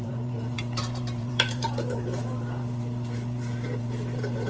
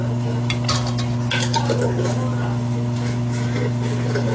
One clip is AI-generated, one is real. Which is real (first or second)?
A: second